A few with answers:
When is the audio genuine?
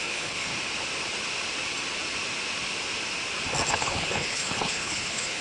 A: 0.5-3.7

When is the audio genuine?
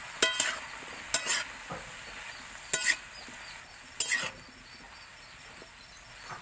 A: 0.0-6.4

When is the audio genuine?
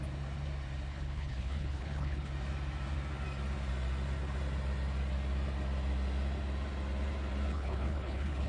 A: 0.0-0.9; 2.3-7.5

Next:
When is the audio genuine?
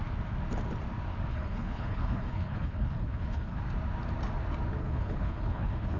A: 0.0-1.3; 3.6-4.8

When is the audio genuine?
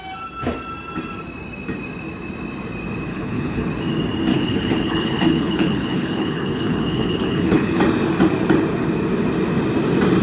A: 0.0-3.1; 3.7-4.3; 7.8-10.2